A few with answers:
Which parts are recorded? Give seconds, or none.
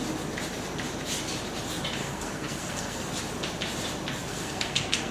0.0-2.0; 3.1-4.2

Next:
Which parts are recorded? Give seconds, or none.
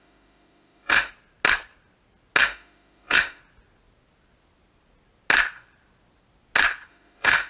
1.1-2.4; 3.4-6.9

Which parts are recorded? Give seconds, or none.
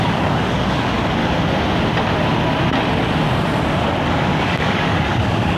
1.2-4.1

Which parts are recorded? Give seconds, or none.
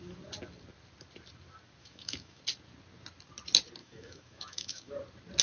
0.0-1.8; 2.4-3.8; 4.9-5.4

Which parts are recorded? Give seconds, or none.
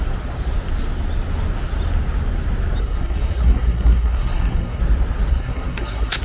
0.0-2.8; 4.8-5.3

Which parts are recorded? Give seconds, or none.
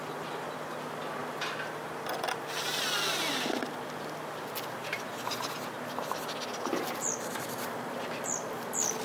0.0-6.7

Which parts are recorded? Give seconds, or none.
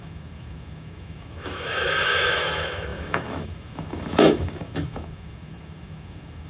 none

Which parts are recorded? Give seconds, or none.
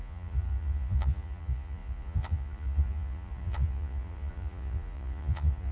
none